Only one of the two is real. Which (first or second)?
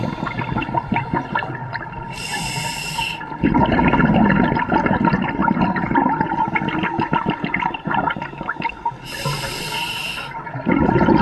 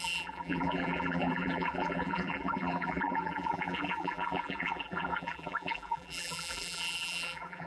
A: first